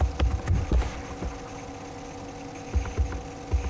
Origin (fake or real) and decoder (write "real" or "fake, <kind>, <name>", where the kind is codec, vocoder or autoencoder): real